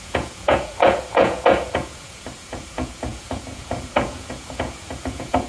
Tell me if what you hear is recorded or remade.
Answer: remade